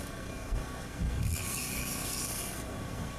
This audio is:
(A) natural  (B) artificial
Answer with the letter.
B